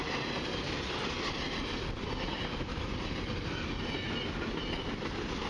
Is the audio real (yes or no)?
yes